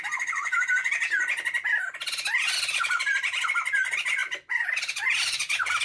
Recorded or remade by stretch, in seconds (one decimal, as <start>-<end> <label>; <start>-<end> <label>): 0.0-0.8 remade; 0.8-2.6 recorded; 2.6-4.2 remade; 4.2-5.0 recorded; 5.0-5.8 remade